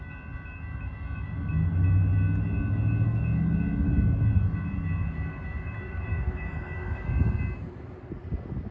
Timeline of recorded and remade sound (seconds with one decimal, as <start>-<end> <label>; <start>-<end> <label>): 0.0-6.1 recorded; 6.1-7.3 remade; 7.3-8.7 recorded

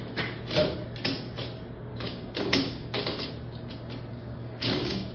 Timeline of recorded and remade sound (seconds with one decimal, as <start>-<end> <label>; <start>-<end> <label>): 0.0-1.9 recorded; 1.9-3.3 remade; 3.3-4.1 recorded; 4.1-5.1 remade

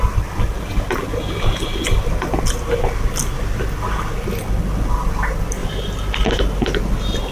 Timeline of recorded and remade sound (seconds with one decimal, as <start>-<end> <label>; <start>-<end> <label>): 0.0-7.3 recorded